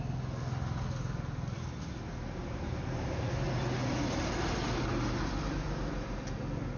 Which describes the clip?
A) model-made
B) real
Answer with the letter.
B